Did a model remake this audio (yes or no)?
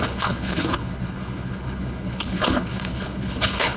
yes